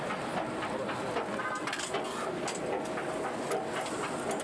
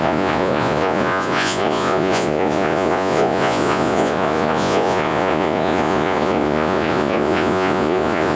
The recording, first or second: first